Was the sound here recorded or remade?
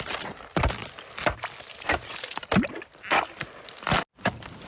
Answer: recorded